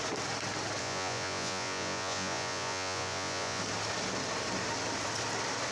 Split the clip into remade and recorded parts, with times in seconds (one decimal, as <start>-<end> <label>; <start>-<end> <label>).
0.0-0.8 recorded; 0.8-3.6 remade; 3.6-5.7 recorded